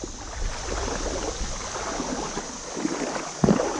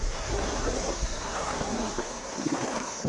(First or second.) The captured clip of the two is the first